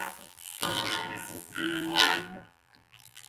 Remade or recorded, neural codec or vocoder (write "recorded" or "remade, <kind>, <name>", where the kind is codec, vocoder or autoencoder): remade, vocoder, BigVGAN v2